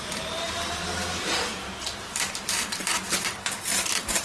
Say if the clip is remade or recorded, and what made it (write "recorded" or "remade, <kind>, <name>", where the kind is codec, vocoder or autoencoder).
remade, vocoder, BigVGAN v2